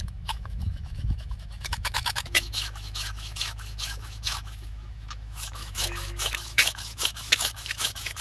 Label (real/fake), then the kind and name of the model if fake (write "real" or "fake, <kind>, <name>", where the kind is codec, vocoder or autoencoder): fake, autoencoder, DAC-VAE